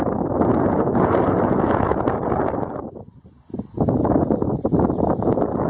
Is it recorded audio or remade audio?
recorded